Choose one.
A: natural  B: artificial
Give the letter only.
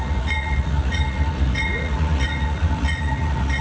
B